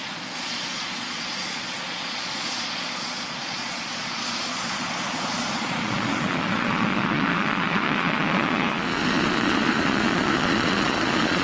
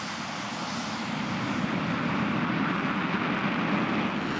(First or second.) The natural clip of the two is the second